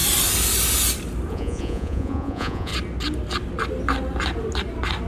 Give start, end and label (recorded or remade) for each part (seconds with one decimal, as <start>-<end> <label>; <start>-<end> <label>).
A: 0.0-1.3 recorded; 1.3-2.7 remade; 2.7-5.1 recorded